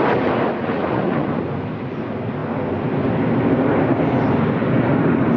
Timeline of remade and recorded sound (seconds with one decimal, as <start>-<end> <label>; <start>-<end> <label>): 0.0-0.6 recorded; 0.6-1.4 remade; 1.4-5.4 recorded